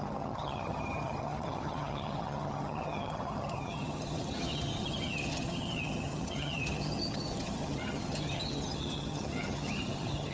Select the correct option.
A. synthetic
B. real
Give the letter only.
A